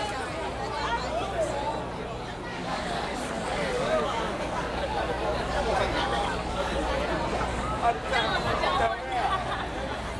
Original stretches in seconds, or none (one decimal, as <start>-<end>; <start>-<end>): 0.0-2.5; 6.9-7.5; 8.1-10.2